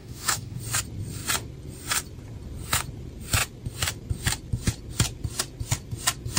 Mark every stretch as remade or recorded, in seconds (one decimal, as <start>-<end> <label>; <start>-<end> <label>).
0.0-0.6 remade; 0.6-6.4 recorded